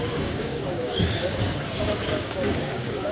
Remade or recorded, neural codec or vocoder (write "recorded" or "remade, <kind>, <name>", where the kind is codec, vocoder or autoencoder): remade, codec, DAC